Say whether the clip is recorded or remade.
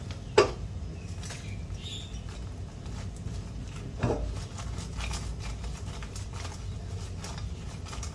recorded